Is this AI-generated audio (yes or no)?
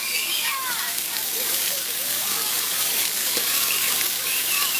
yes